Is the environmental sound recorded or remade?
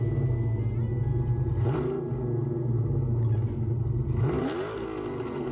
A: recorded